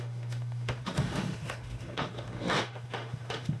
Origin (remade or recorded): remade